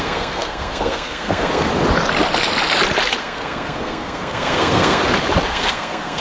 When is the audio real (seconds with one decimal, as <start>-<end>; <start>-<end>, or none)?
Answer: 1.7-3.2; 5.0-5.5